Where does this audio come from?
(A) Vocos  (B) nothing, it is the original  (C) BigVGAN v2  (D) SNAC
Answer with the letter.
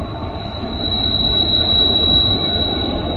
B